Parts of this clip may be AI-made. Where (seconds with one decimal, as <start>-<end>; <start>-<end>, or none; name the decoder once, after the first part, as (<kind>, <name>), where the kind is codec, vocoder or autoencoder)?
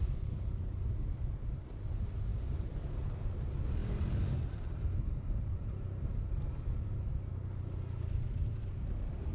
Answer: 2.3-3.0 (vocoder, BigVGAN v2); 3.8-6.0; 7.3-7.8